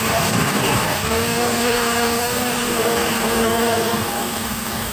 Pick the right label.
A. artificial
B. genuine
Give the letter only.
A